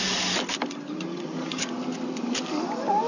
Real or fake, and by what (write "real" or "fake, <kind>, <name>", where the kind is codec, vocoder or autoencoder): real